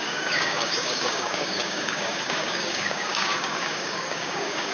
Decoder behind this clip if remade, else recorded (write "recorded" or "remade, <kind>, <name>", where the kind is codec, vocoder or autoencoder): remade, codec, DAC